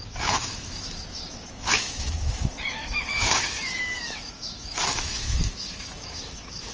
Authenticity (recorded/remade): remade